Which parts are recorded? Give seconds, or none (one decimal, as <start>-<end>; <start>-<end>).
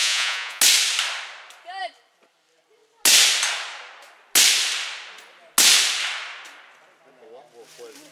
0.6-8.1